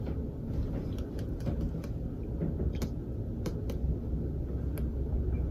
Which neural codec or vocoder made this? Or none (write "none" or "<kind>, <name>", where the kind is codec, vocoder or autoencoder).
none